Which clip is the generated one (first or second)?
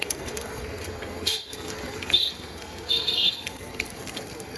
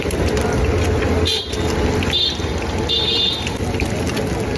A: first